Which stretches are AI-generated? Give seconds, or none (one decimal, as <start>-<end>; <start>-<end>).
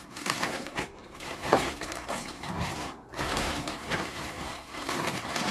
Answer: 0.0-5.5